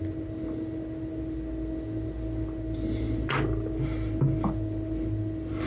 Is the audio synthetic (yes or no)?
no